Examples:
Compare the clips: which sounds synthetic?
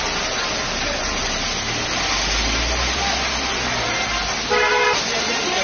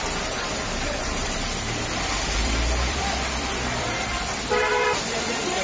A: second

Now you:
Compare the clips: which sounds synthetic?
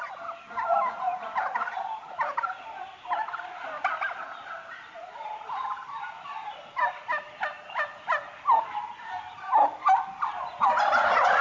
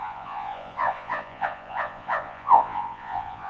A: second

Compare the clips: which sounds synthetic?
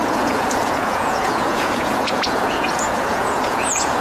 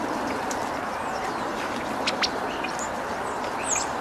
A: first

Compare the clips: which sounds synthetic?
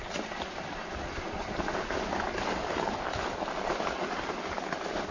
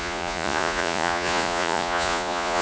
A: second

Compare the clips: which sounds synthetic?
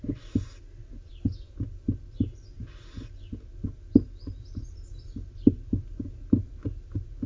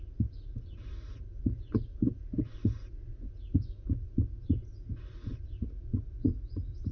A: second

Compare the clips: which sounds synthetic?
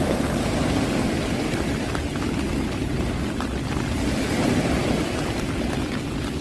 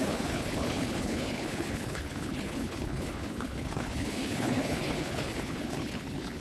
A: second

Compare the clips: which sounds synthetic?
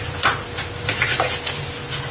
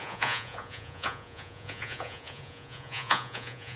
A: second